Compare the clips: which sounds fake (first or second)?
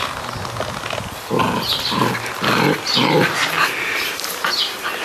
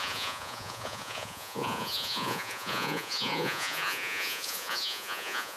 second